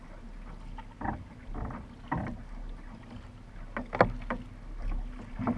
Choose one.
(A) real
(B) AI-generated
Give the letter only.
A